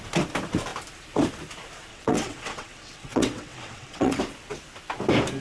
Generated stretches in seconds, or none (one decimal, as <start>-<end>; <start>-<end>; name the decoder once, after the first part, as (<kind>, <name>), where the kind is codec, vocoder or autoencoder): 1.9-4.2 (vocoder, WaveNeXt)